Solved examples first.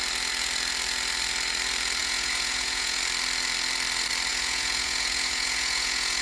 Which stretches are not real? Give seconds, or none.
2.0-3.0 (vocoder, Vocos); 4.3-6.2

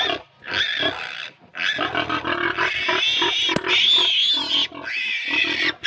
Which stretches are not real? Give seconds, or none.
none

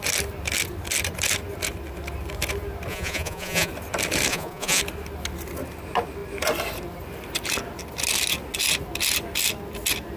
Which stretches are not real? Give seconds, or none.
2.9-3.7 (vocoder, Vocos); 4.3-4.8

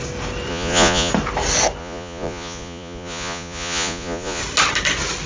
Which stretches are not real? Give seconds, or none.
0.5-1.1 (vocoder, Vocos); 1.8-4.4

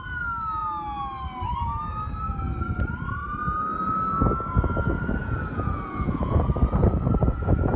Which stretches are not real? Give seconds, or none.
5.2-6.5 (vocoder, Vocos); 7.2-7.8

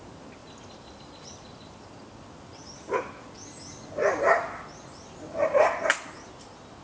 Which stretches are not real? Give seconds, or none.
none